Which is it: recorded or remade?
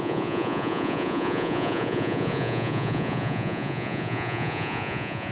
remade